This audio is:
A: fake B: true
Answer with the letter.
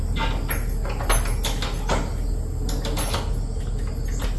B